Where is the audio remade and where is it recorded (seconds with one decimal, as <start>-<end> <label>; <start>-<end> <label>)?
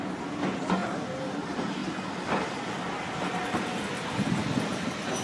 0.0-5.2 recorded